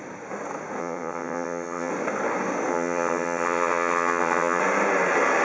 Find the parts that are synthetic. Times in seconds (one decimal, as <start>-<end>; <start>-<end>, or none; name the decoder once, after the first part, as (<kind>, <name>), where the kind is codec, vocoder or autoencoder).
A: 0.8-1.9 (vocoder, HiFi-GAN); 2.7-4.6